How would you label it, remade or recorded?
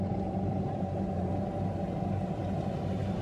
remade